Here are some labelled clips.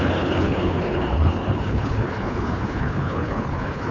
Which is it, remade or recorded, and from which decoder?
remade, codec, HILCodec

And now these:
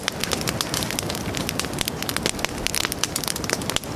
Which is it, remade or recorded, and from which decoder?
recorded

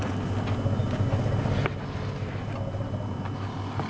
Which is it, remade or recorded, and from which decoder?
recorded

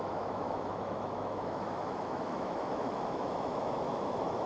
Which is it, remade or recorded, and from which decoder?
remade, autoencoder, DAC-VAE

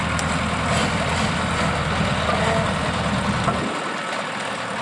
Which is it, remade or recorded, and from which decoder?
recorded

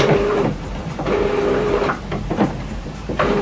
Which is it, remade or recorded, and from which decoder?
remade, vocoder, BigVGAN v2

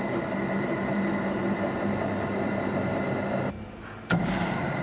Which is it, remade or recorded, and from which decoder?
remade, vocoder, BigVGAN v2